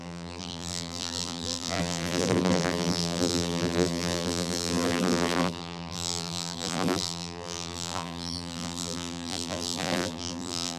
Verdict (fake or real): fake